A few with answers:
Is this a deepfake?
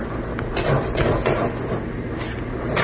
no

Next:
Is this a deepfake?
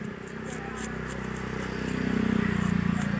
no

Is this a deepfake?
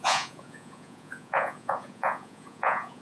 yes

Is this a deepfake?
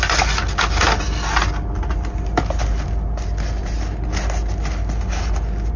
no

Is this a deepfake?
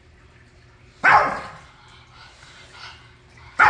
no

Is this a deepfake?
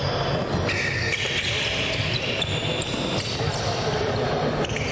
no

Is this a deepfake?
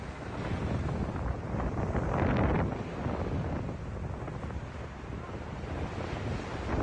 no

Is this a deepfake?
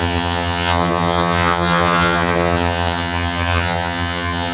yes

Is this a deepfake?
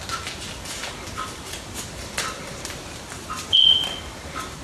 no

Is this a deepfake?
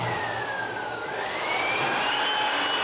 no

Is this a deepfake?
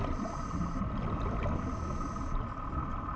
no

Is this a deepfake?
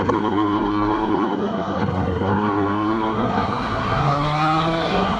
yes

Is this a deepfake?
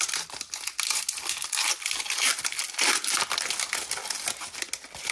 no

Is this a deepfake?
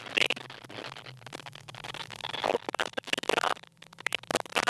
no